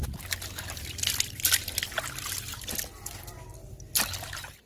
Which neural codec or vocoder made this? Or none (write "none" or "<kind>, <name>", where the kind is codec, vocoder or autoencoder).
none